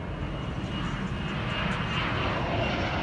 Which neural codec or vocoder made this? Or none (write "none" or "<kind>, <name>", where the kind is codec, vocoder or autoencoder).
none